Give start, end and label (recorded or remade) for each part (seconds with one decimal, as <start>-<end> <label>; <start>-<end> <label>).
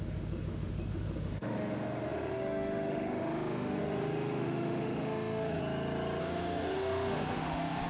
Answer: 0.0-5.6 remade; 5.6-6.2 recorded; 6.2-7.9 remade